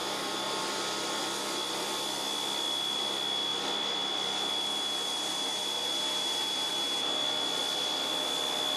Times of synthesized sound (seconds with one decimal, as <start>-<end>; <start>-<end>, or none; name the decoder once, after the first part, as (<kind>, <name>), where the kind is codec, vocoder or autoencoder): 0.0-0.6 (vocoder, BigVGAN v2); 3.5-6.7